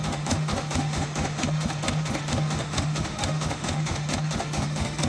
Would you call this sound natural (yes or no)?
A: no